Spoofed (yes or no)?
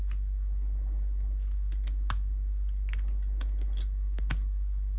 no